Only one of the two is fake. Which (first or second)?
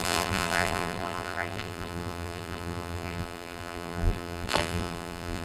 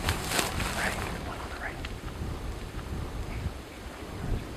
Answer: first